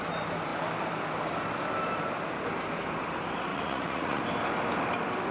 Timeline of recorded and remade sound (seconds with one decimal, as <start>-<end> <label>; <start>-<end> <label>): 0.0-3.5 recorded; 3.5-4.2 remade; 4.2-5.3 recorded